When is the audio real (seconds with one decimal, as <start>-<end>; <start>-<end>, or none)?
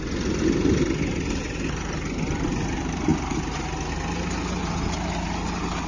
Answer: 0.0-5.9